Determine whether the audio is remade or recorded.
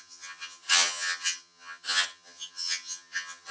remade